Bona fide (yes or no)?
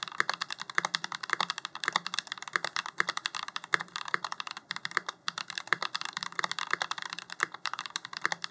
no